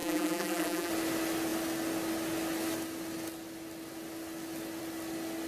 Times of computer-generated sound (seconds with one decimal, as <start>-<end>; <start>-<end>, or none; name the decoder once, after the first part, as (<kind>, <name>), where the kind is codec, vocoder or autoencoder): 0.0-0.9 (vocoder, BigVGAN v2)

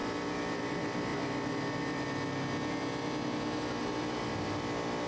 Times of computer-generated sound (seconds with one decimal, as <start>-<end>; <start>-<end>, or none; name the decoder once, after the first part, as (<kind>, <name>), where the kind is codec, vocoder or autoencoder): 0.0-0.6 (vocoder, BigVGAN v2)

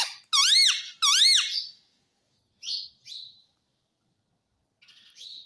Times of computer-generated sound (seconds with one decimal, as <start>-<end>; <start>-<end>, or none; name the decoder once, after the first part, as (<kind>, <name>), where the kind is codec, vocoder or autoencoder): none

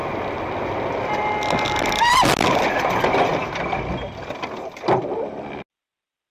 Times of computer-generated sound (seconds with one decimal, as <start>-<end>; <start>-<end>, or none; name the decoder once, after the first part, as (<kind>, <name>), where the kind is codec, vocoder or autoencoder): none

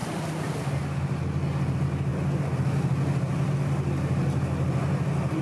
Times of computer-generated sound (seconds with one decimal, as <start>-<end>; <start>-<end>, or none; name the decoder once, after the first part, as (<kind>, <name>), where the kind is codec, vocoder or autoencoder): none

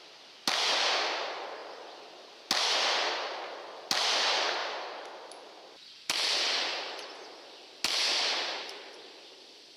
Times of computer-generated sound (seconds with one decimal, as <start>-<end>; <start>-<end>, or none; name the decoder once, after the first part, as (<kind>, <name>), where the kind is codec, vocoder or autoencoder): none

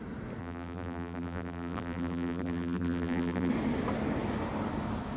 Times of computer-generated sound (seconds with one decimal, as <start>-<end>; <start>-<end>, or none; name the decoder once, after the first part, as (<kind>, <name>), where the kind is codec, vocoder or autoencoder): 0.4-3.5 (vocoder, BigVGAN v2)

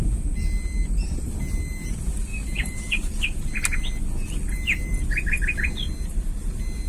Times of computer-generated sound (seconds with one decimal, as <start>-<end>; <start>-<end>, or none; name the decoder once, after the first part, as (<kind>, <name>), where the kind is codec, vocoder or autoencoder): 2.3-3.2 (vocoder, BigVGAN v2)